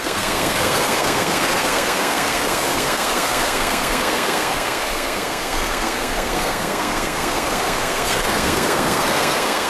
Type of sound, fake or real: fake